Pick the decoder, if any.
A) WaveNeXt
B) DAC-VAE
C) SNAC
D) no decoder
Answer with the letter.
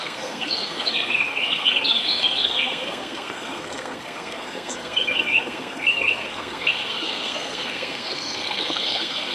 C